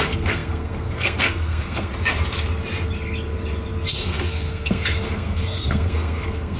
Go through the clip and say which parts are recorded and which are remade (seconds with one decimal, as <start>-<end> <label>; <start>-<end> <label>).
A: 0.0-1.9 remade; 1.9-3.9 recorded; 3.9-6.6 remade